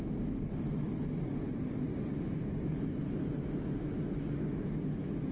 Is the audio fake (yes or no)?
no